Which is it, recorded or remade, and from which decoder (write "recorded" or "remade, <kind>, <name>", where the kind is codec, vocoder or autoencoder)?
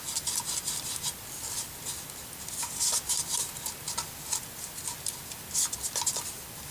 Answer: recorded